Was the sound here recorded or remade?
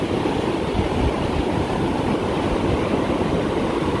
remade